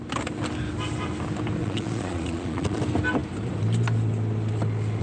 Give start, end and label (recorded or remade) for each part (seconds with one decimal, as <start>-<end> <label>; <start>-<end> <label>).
0.0-1.6 recorded; 1.6-2.8 remade; 2.8-5.0 recorded